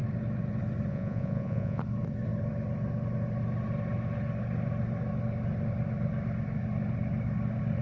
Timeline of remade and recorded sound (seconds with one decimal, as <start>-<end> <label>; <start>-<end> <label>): 0.0-0.9 recorded; 0.9-1.8 remade; 1.8-7.8 recorded